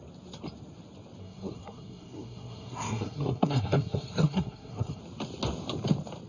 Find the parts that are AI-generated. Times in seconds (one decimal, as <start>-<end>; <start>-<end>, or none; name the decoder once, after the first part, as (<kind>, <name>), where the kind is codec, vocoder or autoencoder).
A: 1.2-5.0 (codec, SNAC)